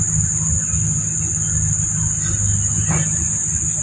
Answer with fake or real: real